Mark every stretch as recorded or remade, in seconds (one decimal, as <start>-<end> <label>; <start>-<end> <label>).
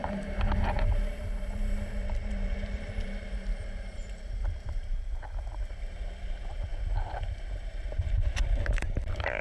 0.0-9.4 remade